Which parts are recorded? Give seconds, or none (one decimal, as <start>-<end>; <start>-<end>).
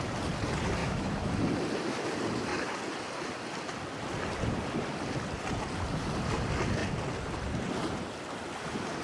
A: 0.0-0.8; 1.3-9.0